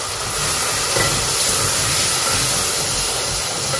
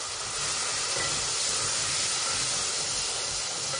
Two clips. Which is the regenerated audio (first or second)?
second